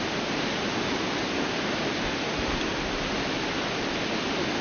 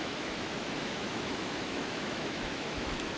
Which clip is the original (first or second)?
first